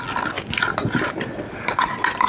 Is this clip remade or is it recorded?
recorded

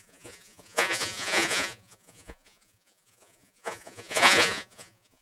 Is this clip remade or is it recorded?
remade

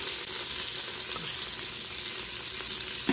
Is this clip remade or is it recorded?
recorded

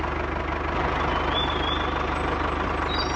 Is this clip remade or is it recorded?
recorded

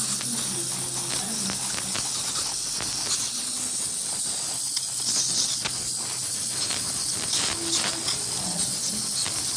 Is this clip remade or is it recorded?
recorded